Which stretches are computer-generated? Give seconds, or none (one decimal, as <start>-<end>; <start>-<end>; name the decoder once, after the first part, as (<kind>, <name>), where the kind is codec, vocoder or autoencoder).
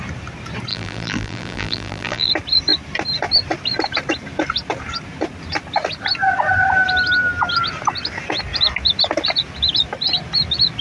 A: 0.7-2.3 (vocoder, BigVGAN v2)